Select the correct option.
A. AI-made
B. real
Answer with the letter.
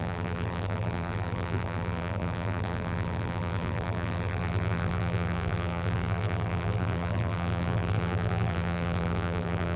A